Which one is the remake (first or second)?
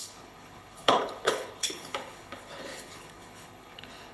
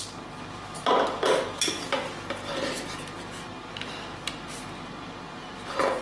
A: first